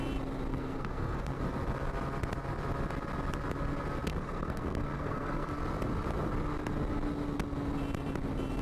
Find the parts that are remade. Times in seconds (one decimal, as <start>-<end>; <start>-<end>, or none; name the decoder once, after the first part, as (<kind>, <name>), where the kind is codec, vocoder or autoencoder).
0.5-1.4 (codec, SNAC); 4.1-5.5